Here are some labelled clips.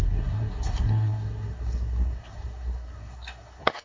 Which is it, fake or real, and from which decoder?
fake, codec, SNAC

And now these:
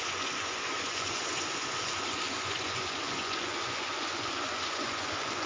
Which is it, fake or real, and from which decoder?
fake, vocoder, Vocos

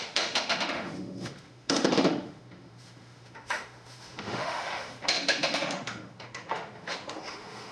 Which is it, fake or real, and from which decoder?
fake, autoencoder, DAC-VAE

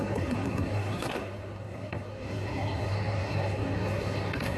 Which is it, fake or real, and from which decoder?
fake, codec, SNAC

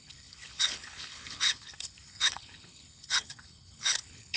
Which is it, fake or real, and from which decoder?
fake, codec, HILCodec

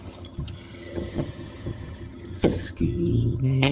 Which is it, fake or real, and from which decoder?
fake, vocoder, HiFi-GAN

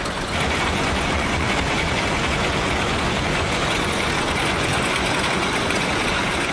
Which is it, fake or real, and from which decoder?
fake, vocoder, Vocos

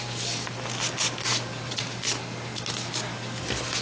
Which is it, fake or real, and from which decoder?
real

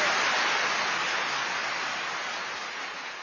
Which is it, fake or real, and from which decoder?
real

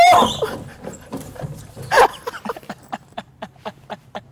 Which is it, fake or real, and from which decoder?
fake, vocoder, BigVGAN v2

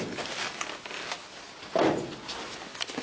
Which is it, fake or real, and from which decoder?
real